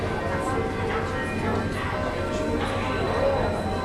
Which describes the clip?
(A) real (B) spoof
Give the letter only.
A